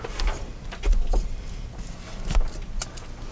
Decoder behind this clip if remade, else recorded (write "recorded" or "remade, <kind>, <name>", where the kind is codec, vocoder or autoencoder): recorded